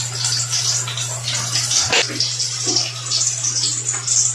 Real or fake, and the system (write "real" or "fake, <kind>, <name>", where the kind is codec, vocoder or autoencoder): real